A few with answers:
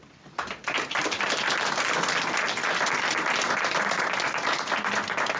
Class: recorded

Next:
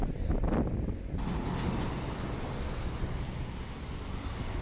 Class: recorded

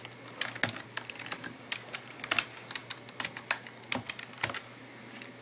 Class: recorded